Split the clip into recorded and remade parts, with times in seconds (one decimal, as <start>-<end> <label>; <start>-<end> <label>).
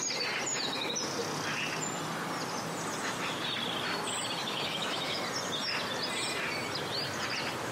0.0-4.4 recorded; 4.4-5.2 remade; 5.2-7.7 recorded